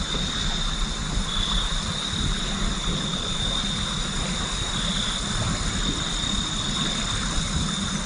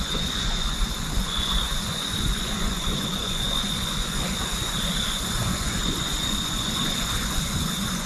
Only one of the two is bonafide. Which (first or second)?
first